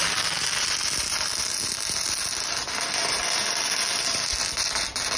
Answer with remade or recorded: recorded